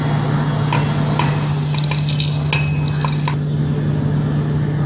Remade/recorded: recorded